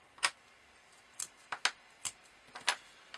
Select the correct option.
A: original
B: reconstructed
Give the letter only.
A